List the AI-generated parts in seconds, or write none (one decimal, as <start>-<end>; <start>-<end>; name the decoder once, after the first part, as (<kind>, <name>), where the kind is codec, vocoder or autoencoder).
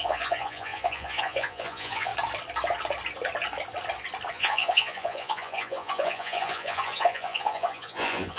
0.0-2.1 (vocoder, Vocos); 4.3-8.4